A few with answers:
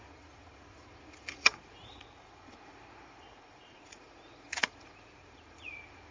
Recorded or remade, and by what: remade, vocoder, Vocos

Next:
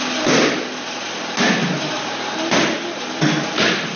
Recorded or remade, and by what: recorded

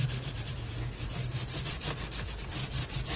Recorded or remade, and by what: recorded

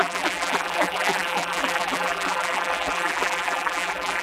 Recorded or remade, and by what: remade, vocoder, BigVGAN v2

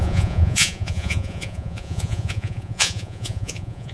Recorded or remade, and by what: remade, vocoder, Vocos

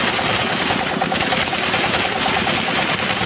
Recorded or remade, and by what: recorded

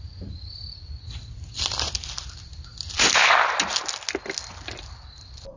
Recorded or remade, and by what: recorded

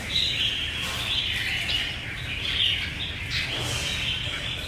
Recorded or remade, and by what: recorded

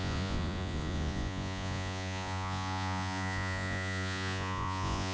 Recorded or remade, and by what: remade, vocoder, Vocos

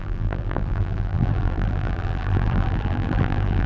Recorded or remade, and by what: remade, vocoder, BigVGAN v2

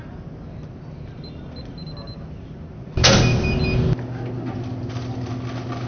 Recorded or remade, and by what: recorded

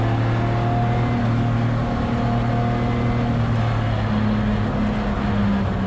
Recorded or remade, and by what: recorded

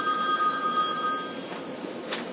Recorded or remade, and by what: recorded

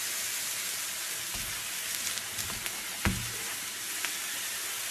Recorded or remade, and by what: recorded